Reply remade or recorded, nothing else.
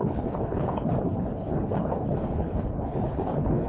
remade